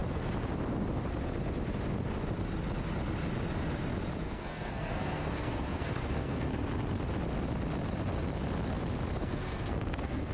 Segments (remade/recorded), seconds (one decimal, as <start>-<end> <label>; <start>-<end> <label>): 0.0-4.2 recorded; 4.2-6.5 remade; 6.5-9.2 recorded; 9.2-10.3 remade